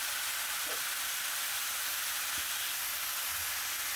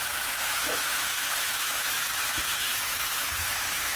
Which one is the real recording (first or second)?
first